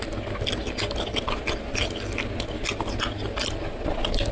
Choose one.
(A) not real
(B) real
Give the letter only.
B